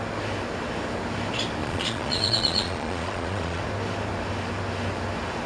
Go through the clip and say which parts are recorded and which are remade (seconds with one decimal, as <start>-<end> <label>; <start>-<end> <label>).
0.0-1.6 recorded; 1.6-3.6 remade; 3.6-5.5 recorded

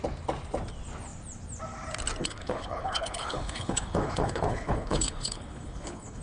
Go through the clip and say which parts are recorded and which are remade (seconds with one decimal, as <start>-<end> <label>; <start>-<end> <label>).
0.0-2.2 recorded; 2.2-6.2 remade